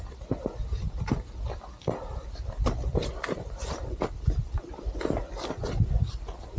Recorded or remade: recorded